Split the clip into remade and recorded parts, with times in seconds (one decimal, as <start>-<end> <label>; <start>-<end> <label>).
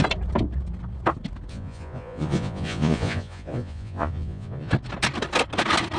0.0-1.5 recorded; 1.5-4.7 remade; 4.7-6.0 recorded